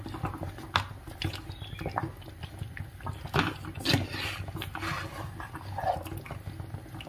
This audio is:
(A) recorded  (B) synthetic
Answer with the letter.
A